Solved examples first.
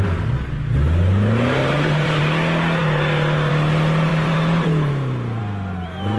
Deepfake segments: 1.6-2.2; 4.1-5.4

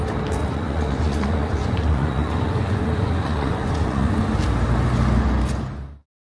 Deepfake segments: 0.4-4.2

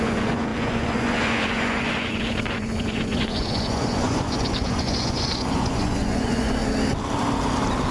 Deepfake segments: 0.0-6.6

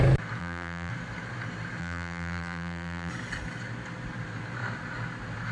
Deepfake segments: 0.4-0.9; 1.8-3.1

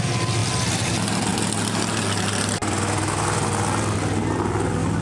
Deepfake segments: none